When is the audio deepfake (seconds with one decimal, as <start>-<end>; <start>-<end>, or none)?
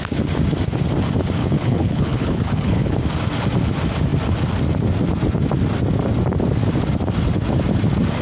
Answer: 1.4-3.0